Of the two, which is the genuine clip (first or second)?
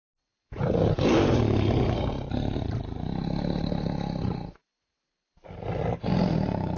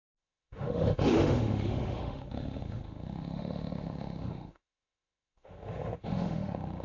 first